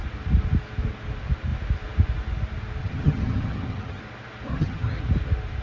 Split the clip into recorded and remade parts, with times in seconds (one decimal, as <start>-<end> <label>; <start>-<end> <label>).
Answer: 0.0-2.8 recorded; 2.8-4.0 remade; 4.0-4.5 recorded; 4.5-5.0 remade; 5.0-5.6 recorded